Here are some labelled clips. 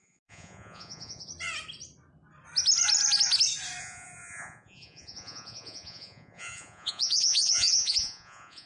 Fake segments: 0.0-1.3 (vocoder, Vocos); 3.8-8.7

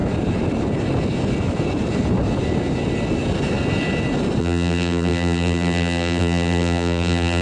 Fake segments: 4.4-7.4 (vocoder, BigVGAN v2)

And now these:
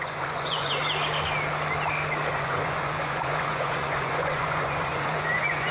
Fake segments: 0.0-0.8 (vocoder, Vocos); 2.3-5.7

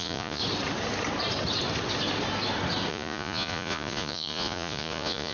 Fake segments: 0.0-0.4 (vocoder, Vocos); 2.9-5.3

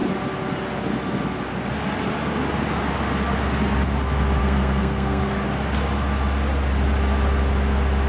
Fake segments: 4.4-5.2 (codec, SNAC)

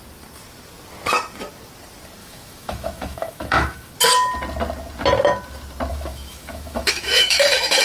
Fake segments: 2.2-3.9 (autoencoder, DAC-VAE); 5.9-7.8